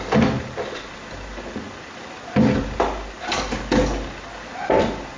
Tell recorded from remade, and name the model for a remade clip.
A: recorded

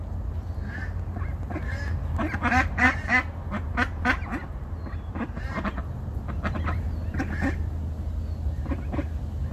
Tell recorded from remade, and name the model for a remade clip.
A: recorded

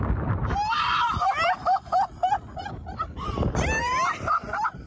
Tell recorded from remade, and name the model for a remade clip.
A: recorded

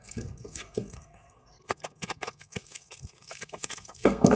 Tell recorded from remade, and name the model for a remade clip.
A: remade, codec, SNAC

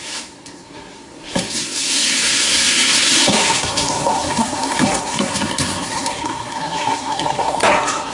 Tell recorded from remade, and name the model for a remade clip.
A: remade, codec, SNAC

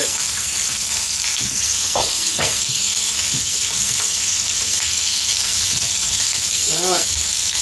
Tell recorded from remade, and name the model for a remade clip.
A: remade, codec, SNAC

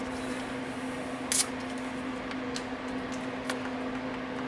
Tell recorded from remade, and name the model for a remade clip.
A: recorded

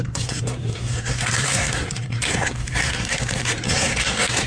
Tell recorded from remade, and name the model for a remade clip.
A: remade, codec, SNAC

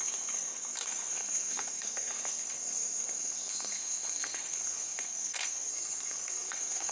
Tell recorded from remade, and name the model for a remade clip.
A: remade, codec, SNAC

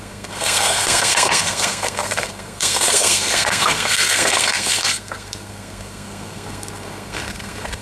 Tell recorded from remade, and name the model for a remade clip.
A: remade, codec, SNAC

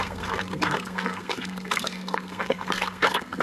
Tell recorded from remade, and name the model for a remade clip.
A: remade, codec, SNAC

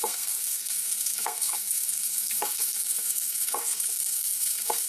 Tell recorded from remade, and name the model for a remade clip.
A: remade, codec, SNAC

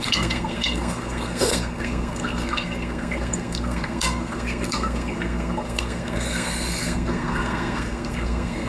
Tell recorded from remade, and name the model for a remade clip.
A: remade, codec, SNAC